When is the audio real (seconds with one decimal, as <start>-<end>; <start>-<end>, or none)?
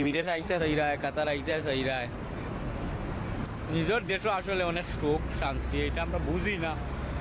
0.6-7.2